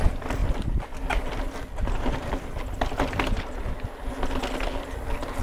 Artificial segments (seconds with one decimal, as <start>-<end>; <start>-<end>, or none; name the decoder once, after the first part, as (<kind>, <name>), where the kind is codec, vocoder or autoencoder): none